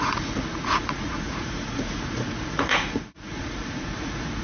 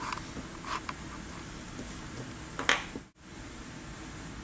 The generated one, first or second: first